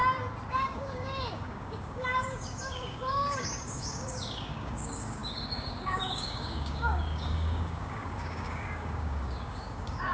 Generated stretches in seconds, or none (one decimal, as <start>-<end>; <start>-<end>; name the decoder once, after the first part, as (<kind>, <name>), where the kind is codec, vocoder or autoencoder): 0.5-10.1 (codec, DAC)